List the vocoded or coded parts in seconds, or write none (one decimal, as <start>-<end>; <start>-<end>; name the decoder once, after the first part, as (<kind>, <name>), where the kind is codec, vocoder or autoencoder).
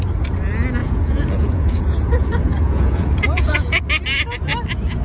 0.8-3.8 (vocoder, Vocos)